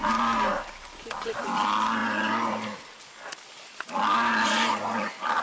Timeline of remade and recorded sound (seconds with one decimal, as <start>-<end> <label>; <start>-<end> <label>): 0.0-5.4 recorded